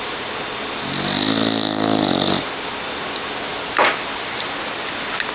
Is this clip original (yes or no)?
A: yes